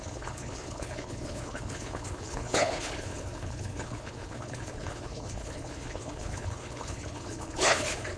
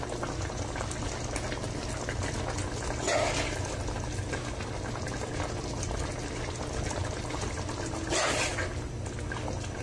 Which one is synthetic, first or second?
first